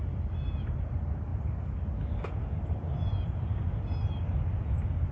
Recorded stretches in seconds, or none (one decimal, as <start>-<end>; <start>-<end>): 0.0-5.1